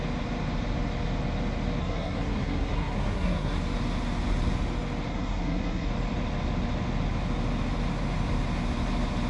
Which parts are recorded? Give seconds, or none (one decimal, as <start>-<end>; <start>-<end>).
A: 0.0-1.8; 3.6-5.1; 5.9-9.3